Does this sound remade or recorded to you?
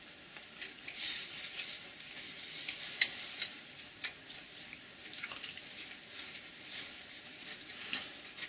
remade